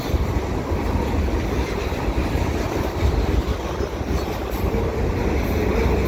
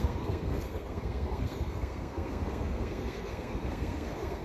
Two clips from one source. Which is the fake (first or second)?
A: second